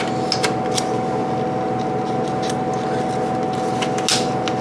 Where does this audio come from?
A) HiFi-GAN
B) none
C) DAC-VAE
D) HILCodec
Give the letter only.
B